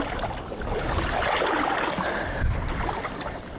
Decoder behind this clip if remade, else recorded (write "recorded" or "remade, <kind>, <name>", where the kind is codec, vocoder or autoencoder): recorded